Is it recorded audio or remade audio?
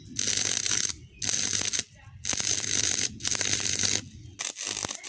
recorded